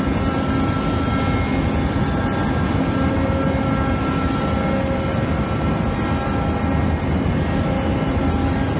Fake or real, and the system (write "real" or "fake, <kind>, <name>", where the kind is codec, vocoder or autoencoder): real